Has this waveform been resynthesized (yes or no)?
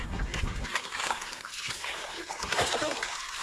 yes